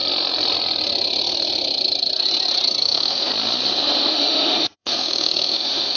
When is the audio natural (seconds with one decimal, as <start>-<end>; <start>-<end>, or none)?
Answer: 0.0-2.8; 3.3-4.1